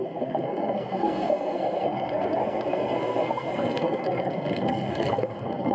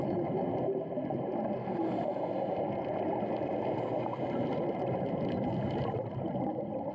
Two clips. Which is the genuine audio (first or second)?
second